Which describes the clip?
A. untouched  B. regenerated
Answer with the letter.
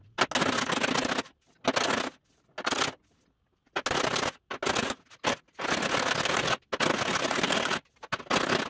A